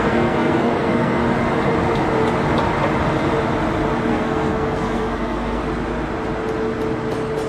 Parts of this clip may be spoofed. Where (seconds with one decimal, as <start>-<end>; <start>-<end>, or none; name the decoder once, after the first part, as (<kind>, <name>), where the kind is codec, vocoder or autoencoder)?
0.0-1.2 (codec, SNAC); 4.1-5.6